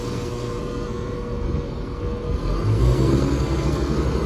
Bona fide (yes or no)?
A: no